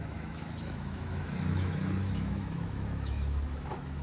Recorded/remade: remade